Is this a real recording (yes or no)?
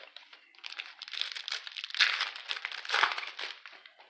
yes